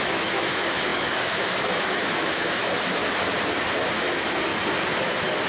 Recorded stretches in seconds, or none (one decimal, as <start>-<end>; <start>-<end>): 3.0-4.0; 4.5-5.0